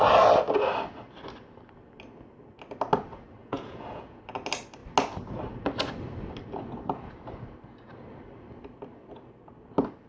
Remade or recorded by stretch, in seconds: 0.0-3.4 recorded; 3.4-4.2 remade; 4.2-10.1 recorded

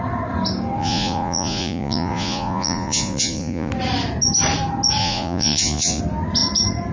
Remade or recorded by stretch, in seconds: 0.0-0.8 recorded; 0.8-3.7 remade; 3.7-5.0 recorded; 5.0-6.0 remade; 6.0-6.9 recorded

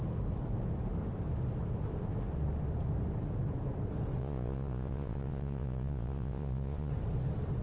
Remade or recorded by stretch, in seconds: 0.0-4.2 recorded; 4.2-6.9 remade; 6.9-7.6 recorded

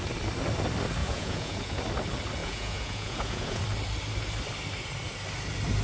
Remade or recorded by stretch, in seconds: 0.0-1.0 recorded; 1.0-1.8 remade; 1.8-2.4 recorded; 2.4-3.6 remade; 3.6-5.8 recorded